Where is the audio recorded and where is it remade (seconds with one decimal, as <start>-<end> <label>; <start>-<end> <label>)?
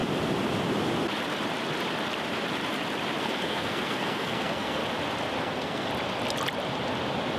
0.0-3.2 recorded; 3.2-4.8 remade; 4.8-5.4 recorded; 5.4-5.9 remade; 5.9-7.4 recorded